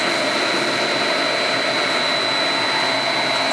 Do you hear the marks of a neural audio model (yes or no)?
no